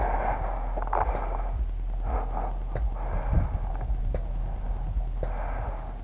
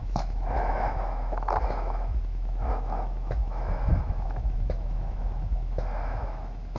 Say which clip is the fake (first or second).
second